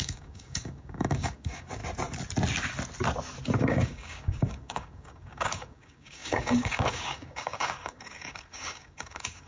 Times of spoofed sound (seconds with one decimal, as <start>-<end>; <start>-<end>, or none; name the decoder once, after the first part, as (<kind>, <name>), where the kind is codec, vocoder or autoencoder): 0.0-1.8 (codec, DAC); 3.6-9.5